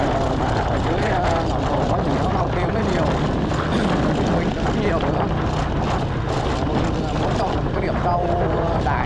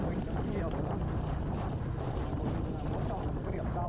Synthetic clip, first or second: second